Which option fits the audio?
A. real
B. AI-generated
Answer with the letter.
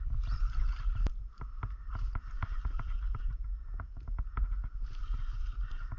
A